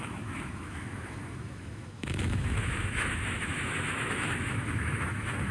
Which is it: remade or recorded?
remade